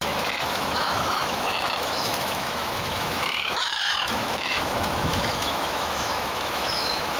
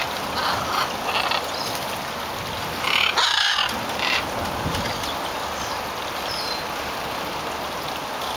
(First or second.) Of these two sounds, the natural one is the second